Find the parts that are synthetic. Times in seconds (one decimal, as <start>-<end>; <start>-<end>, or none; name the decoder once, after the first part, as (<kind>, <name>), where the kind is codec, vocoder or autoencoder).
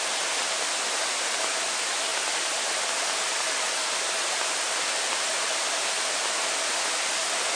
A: none